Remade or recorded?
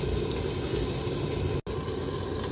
recorded